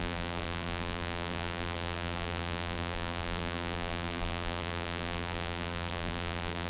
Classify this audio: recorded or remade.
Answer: remade